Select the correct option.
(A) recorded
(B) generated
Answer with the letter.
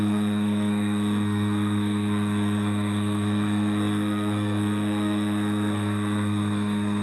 B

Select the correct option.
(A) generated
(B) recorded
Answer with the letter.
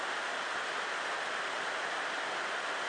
B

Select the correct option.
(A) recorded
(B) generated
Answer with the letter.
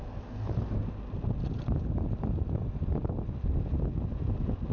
A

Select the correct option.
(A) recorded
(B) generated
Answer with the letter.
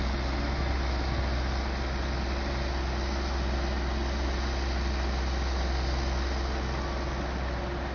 A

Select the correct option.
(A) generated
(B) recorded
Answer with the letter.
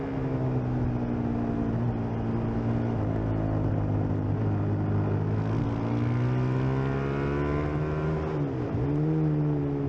B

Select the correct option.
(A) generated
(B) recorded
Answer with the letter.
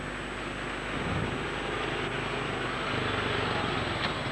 B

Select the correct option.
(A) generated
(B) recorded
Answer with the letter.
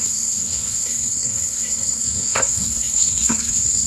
A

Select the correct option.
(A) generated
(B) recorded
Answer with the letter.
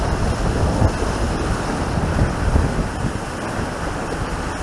B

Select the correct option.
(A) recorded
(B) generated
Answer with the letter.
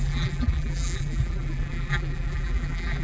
B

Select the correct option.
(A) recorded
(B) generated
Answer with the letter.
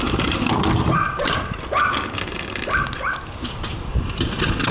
A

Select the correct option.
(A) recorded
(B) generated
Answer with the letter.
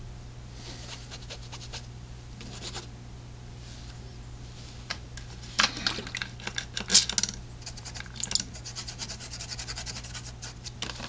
A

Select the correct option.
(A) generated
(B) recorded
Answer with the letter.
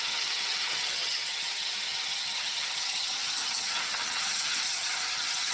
A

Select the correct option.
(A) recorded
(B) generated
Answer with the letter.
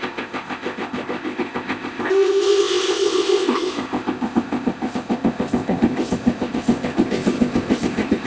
B